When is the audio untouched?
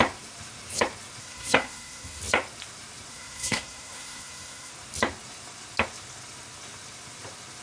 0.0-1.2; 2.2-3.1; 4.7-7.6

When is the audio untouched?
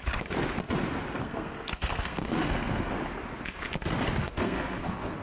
0.0-1.2; 2.9-4.2